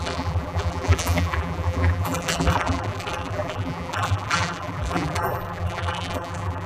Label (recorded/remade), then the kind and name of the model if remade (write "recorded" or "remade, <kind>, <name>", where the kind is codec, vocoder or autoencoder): remade, vocoder, BigVGAN v2